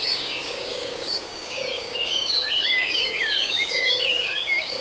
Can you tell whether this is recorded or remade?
remade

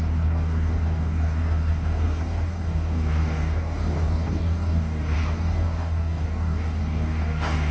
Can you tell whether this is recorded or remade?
remade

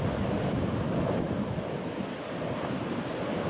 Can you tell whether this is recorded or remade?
recorded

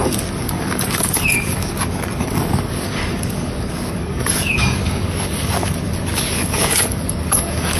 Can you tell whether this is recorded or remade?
remade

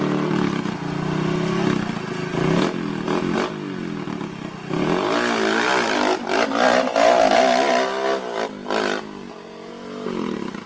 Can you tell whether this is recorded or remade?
recorded